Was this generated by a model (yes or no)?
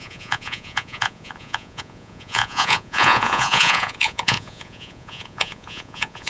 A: yes